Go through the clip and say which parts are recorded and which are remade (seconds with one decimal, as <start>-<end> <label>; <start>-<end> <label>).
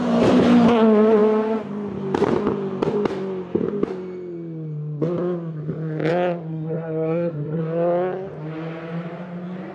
0.0-6.5 recorded; 6.5-7.6 remade; 7.6-9.7 recorded